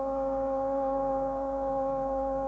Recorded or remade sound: remade